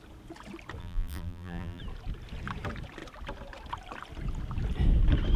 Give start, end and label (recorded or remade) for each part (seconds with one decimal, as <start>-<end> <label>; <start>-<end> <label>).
0.0-0.8 recorded; 0.8-1.8 remade; 1.8-5.4 recorded

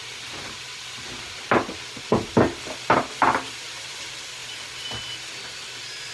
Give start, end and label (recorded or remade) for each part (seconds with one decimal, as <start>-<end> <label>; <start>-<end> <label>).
0.0-6.1 remade